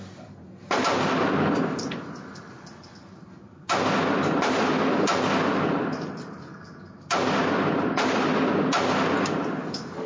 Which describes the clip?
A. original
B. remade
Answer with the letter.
A